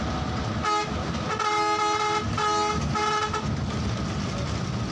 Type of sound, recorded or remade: recorded